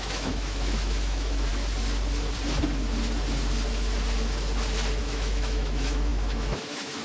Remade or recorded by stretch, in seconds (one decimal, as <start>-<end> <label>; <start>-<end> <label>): 0.0-1.5 remade; 1.5-5.0 recorded; 5.0-7.0 remade